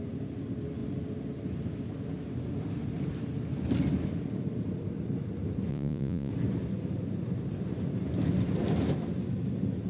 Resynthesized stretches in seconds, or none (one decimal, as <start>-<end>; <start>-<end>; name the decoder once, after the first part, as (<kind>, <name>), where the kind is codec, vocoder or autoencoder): 5.7-6.3 (vocoder, Vocos)